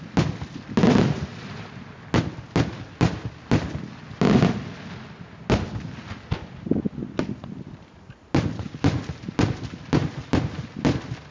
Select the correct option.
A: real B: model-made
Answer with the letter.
A